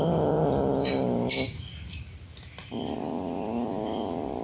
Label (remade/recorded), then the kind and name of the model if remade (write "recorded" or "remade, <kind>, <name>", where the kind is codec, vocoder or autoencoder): recorded